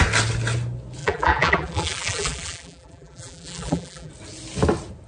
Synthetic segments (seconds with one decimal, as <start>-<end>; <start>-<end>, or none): 1.0-4.1